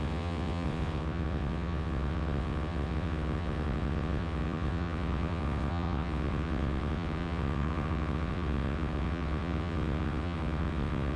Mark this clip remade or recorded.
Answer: remade